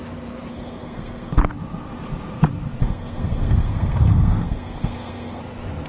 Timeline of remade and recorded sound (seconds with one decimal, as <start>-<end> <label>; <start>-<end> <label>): 0.0-0.5 recorded; 0.5-1.4 remade; 1.4-2.8 recorded; 2.8-5.4 remade; 5.4-5.9 recorded